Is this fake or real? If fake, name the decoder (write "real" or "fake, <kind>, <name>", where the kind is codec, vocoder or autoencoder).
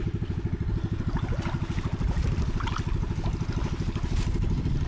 real